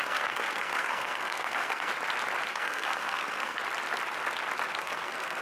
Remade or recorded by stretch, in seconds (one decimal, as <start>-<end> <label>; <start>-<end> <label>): 0.0-1.9 remade; 1.9-2.5 recorded; 2.5-3.6 remade; 3.6-4.8 recorded; 4.8-5.4 remade